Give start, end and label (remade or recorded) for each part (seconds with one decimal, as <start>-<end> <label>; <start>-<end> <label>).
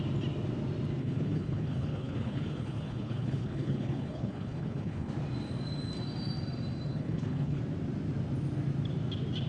0.0-1.0 recorded; 1.0-5.1 remade; 5.1-6.9 recorded; 6.9-7.6 remade; 7.6-9.5 recorded